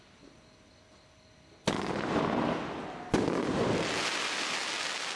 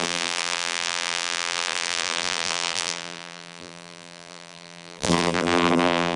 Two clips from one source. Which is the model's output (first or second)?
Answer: second